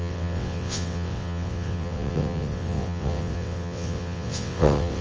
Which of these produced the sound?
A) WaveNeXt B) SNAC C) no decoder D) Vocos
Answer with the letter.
A